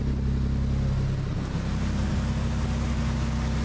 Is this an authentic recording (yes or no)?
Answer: yes